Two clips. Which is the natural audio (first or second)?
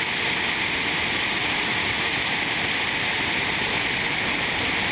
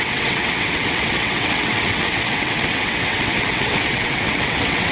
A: first